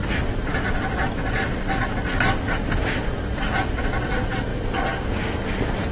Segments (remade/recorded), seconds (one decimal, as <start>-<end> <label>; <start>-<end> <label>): 0.0-5.9 recorded